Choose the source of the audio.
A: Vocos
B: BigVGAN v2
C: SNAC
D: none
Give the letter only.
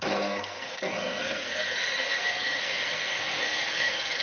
C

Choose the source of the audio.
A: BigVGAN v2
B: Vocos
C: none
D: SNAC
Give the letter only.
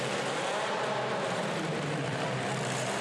A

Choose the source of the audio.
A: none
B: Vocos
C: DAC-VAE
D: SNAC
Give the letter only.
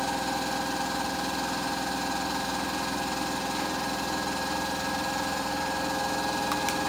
A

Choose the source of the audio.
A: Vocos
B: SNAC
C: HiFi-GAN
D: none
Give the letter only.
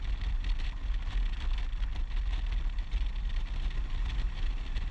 D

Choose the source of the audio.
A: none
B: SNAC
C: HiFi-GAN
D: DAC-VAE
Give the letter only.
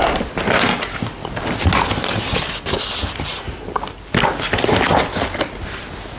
A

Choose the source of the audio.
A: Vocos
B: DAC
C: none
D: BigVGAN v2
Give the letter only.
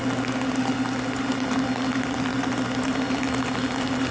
C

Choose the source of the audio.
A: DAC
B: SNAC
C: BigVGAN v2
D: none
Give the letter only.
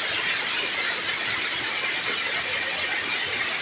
D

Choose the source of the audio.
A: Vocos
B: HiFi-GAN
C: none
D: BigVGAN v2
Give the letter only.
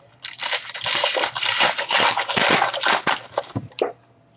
D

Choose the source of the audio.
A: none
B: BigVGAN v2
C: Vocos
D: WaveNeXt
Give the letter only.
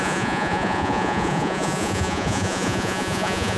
C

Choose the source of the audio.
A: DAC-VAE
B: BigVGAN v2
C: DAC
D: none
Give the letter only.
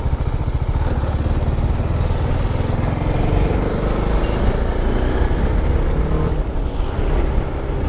D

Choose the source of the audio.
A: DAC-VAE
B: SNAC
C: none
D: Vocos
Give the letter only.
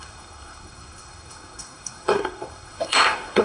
B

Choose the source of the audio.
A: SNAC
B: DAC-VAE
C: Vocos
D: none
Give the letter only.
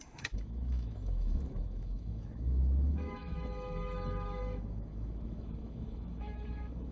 B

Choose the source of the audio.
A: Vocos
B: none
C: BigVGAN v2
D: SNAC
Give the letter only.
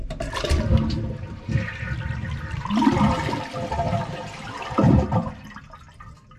B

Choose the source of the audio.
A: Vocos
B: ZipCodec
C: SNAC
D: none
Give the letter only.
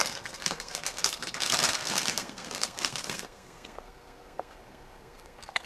C